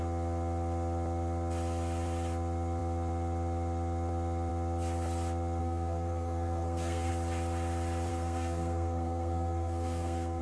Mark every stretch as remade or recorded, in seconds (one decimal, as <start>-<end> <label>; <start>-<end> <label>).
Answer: 0.0-5.6 recorded; 5.6-7.1 remade; 7.1-8.1 recorded; 8.1-10.4 remade